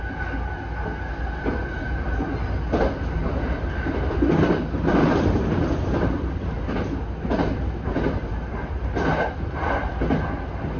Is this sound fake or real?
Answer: real